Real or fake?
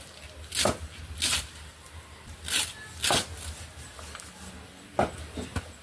real